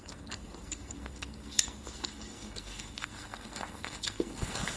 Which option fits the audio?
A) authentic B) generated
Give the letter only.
B